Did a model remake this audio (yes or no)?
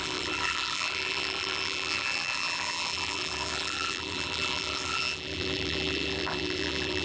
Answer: yes